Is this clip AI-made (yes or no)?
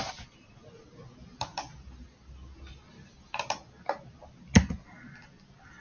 no